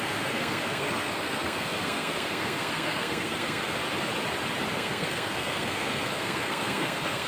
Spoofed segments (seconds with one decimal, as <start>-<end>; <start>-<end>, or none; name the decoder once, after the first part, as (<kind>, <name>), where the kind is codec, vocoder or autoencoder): 0.0-3.8 (codec, SNAC); 4.7-7.3